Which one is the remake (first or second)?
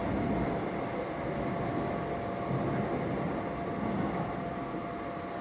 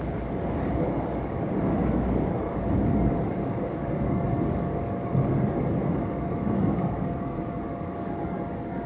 second